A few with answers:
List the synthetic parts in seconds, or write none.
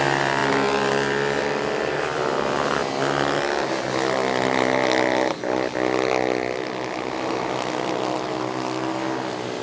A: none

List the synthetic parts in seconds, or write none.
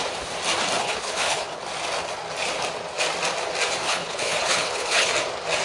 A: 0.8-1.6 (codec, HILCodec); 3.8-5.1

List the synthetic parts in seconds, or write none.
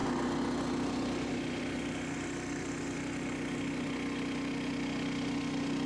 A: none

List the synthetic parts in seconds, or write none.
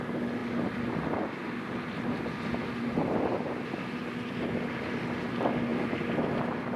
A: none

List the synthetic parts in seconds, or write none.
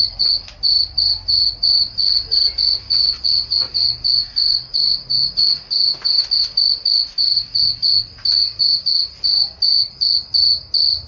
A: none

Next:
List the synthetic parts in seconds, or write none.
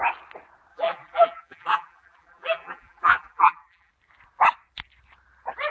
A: 0.7-3.9 (vocoder, BigVGAN v2)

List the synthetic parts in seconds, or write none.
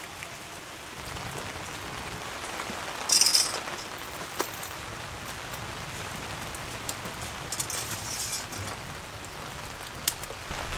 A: none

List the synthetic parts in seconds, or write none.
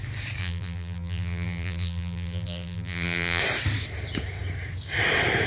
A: 0.4-3.4 (vocoder, BigVGAN v2)